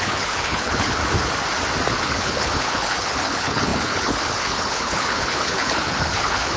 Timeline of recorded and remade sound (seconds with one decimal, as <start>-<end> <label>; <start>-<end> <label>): 0.0-1.0 remade; 1.0-2.0 recorded; 2.0-6.6 remade